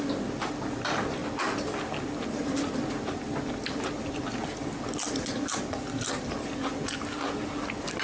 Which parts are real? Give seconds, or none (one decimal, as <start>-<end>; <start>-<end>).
0.0-8.0